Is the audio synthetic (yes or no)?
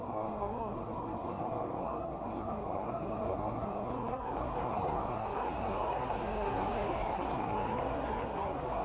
yes